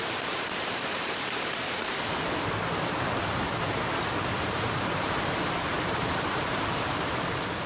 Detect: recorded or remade remade